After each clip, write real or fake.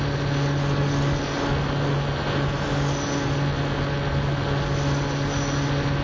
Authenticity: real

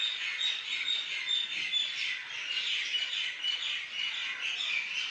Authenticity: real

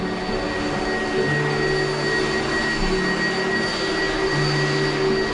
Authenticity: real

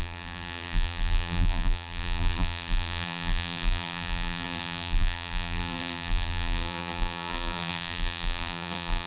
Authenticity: fake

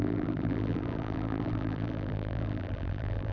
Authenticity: fake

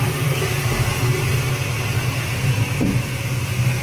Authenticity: real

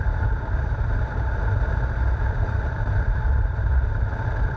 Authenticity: fake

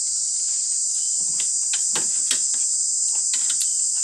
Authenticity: real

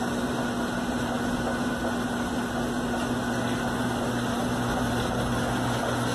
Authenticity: real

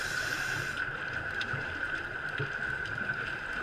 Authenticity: real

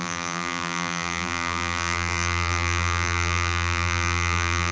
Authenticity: fake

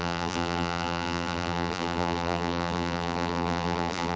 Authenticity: fake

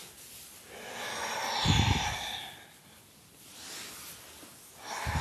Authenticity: real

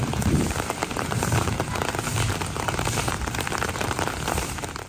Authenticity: fake